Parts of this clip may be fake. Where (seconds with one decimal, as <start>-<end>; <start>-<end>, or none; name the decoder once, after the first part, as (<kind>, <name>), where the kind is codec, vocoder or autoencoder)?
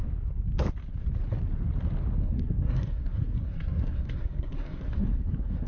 2.2-5.7 (codec, SNAC)